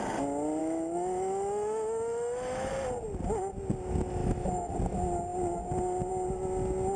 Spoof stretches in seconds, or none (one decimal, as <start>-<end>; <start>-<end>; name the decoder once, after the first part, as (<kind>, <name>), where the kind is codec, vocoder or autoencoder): 0.6-2.7 (autoencoder, DAC-VAE); 4.2-4.7